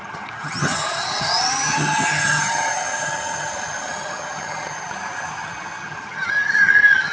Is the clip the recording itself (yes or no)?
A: no